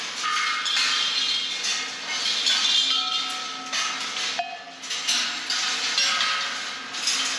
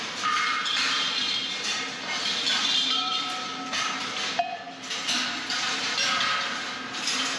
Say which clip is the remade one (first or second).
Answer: second